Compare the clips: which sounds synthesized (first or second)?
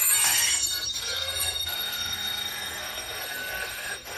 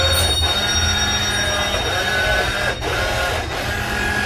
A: first